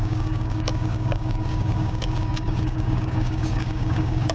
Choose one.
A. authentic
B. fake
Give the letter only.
B